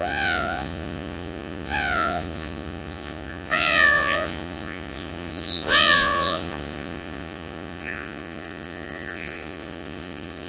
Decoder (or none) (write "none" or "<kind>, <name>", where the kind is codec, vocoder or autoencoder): vocoder, Vocos